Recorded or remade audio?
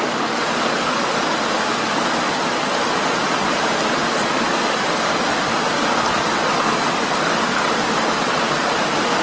recorded